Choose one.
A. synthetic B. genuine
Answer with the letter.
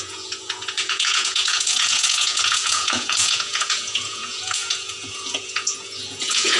A